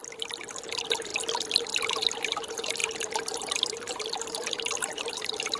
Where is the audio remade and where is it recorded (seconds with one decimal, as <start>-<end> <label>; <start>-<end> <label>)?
0.0-0.5 recorded; 0.5-1.1 remade; 1.1-1.8 recorded; 1.8-5.6 remade